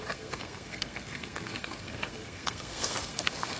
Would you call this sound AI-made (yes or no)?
yes